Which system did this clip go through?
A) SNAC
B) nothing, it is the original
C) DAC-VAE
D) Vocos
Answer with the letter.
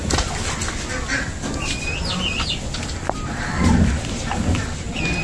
B